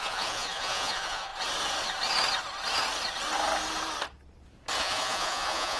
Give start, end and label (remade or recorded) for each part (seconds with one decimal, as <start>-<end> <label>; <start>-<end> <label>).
0.0-1.3 remade; 1.3-4.8 recorded; 4.8-5.8 remade